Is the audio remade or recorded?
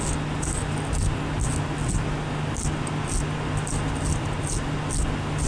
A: recorded